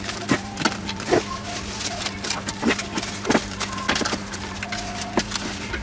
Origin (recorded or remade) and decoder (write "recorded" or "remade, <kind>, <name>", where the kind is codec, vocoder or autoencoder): recorded